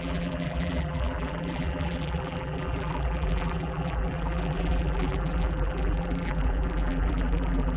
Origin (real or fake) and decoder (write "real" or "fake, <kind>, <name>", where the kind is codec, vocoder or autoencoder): fake, vocoder, BigVGAN v2